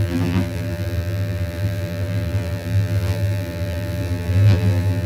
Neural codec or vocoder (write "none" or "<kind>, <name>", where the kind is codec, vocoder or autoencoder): vocoder, BigVGAN v2